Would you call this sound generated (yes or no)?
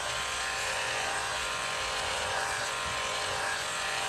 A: yes